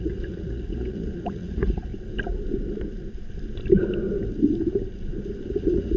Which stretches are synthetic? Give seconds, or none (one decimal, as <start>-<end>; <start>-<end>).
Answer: 0.0-1.9; 5.5-6.0